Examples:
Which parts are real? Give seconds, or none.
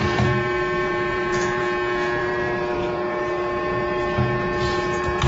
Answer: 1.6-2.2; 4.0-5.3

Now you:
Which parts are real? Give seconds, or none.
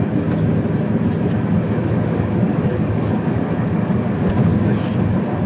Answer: 0.0-1.6; 4.9-5.5